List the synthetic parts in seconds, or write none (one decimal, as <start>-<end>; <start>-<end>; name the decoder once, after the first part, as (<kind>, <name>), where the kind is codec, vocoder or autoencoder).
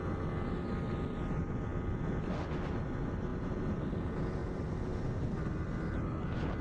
none